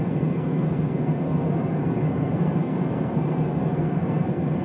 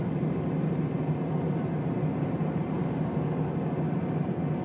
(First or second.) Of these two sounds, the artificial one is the first